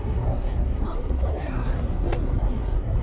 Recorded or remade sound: remade